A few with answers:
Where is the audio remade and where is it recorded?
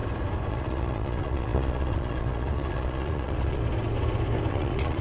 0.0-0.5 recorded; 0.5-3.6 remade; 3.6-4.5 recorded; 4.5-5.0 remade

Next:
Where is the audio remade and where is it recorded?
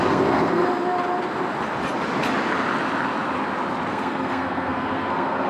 0.0-0.6 remade; 0.6-3.9 recorded; 3.9-5.5 remade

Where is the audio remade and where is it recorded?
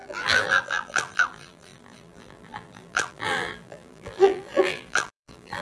0.0-5.6 remade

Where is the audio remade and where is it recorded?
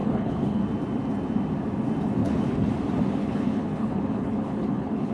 0.0-0.6 remade; 0.6-2.2 recorded; 2.2-2.7 remade; 2.7-3.2 recorded; 3.2-5.1 remade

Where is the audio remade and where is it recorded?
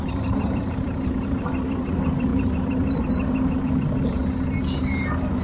0.0-4.2 remade; 4.2-4.8 recorded; 4.8-5.4 remade